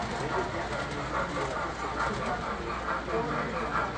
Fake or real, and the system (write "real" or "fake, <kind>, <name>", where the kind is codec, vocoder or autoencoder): real